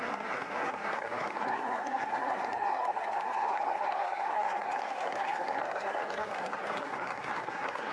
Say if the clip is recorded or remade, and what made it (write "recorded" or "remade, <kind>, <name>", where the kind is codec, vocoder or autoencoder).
remade, codec, SNAC